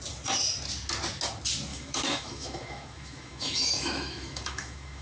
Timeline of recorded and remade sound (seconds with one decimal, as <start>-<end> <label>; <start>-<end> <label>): 0.0-1.7 recorded; 1.7-5.0 remade